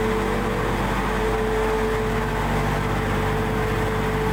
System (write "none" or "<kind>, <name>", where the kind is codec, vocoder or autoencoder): none